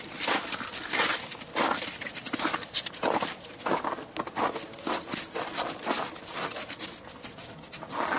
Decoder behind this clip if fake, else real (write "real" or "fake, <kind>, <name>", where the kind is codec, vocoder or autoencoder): real